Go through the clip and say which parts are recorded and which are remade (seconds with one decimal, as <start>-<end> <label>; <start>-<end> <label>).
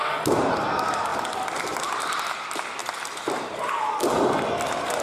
0.0-1.1 remade; 1.1-1.8 recorded; 1.8-2.8 remade; 2.8-3.8 recorded; 3.8-5.0 remade